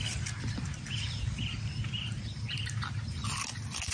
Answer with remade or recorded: recorded